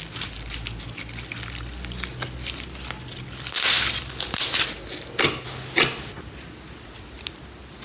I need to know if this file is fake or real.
real